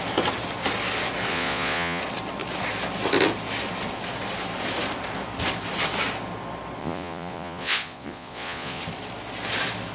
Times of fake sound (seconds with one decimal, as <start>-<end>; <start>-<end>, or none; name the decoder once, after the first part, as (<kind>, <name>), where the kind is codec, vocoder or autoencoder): 1.3-2.0 (vocoder, Vocos); 6.8-8.8